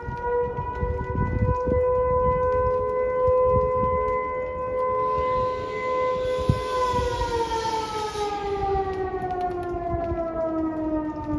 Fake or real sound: real